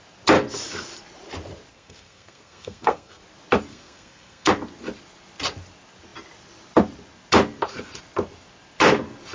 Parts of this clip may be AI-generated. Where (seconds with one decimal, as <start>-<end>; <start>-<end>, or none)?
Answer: 1.7-3.2; 3.7-4.5